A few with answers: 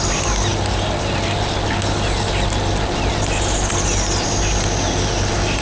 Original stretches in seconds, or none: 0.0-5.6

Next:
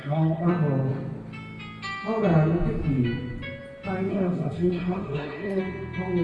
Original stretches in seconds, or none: 0.5-4.1; 5.6-6.2

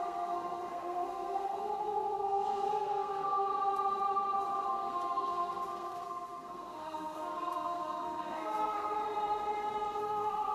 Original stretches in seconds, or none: 3.5-4.7; 9.0-10.0

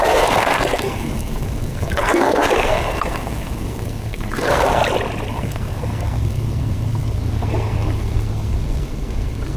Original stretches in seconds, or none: 4.8-5.3